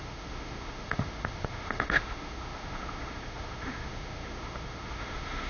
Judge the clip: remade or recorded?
remade